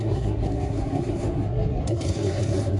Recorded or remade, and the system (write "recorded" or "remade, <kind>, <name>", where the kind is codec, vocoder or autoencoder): remade, codec, SNAC